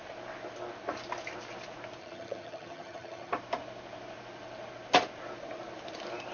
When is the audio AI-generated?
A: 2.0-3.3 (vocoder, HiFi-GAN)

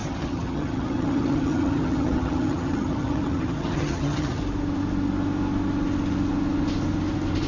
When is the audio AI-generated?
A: 0.0-4.4 (vocoder, HiFi-GAN)

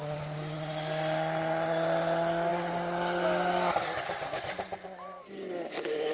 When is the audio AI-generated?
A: none

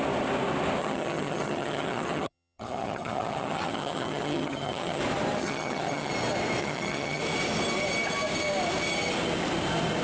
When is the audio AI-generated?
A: 0.8-5.0 (vocoder, HiFi-GAN); 5.4-6.1; 6.6-7.2

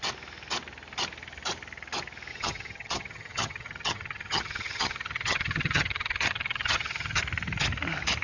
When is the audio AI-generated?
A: 2.3-7.2 (vocoder, HiFi-GAN)